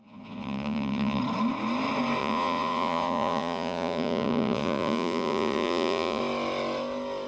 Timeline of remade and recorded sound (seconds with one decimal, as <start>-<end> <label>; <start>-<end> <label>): 0.0-1.2 remade; 1.2-2.2 recorded; 2.2-6.2 remade; 6.2-7.3 recorded